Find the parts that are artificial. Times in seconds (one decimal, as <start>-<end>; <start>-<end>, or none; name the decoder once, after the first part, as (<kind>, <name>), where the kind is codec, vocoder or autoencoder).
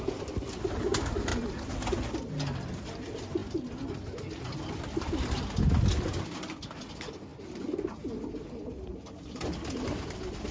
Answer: none